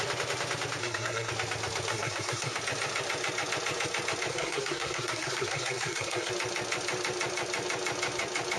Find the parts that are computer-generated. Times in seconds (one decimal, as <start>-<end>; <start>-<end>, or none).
0.8-1.3; 1.9-2.6; 4.3-6.3